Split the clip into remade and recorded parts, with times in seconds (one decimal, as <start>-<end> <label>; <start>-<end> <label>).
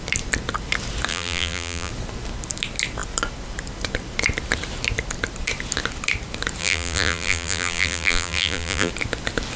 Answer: 0.0-1.1 recorded; 1.1-1.9 remade; 1.9-6.6 recorded; 6.6-8.9 remade; 8.9-9.6 recorded